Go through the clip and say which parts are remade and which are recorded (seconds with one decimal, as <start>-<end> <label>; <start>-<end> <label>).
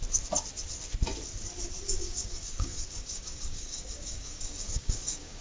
0.0-2.0 recorded; 2.0-5.4 remade